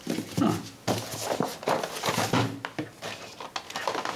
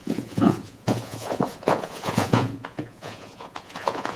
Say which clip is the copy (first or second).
second